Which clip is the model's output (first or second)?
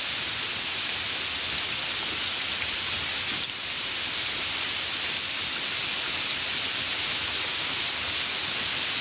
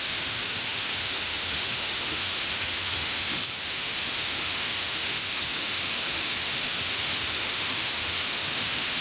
second